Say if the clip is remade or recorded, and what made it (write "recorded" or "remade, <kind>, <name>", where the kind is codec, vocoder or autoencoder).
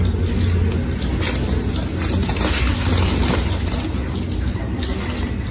recorded